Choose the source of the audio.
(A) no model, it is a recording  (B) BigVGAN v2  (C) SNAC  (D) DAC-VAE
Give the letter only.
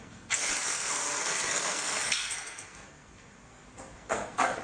C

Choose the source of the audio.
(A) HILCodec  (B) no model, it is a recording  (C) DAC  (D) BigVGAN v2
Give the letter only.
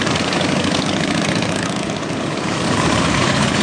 C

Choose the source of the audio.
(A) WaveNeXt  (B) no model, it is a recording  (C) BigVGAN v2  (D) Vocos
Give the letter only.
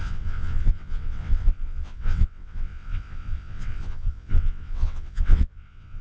A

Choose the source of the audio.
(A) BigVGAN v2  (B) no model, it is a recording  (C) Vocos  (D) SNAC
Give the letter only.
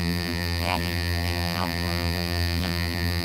A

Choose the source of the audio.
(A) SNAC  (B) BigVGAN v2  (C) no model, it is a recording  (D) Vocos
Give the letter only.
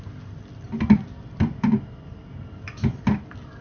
C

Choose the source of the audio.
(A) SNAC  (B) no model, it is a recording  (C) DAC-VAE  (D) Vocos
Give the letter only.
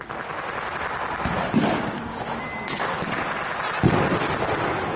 B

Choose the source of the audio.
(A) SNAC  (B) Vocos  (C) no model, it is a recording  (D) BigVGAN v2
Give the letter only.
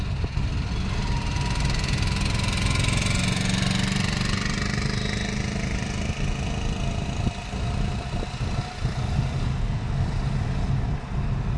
C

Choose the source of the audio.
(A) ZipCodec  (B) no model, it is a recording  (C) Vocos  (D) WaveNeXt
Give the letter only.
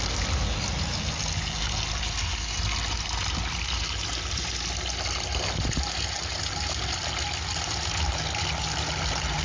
B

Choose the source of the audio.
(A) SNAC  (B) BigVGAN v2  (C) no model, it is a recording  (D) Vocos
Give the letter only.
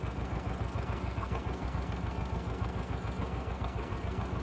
A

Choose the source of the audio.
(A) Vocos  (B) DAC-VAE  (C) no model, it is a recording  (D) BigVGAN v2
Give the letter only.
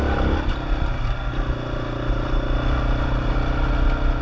C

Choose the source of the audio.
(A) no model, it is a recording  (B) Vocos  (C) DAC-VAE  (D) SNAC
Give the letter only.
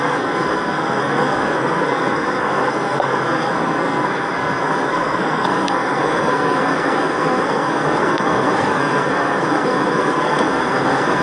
D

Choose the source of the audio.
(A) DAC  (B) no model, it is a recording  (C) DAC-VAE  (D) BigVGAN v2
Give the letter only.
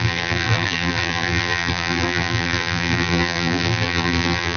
D